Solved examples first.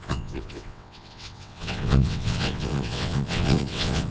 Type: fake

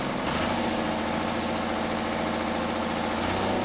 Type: real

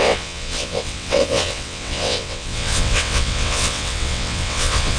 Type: fake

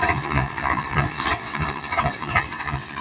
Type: fake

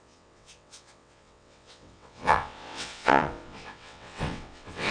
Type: fake